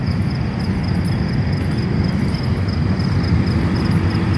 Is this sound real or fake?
real